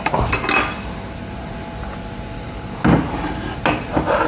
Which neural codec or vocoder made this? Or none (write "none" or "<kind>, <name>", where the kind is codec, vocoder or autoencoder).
none